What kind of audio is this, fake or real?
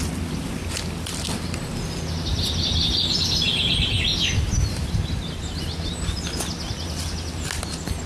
real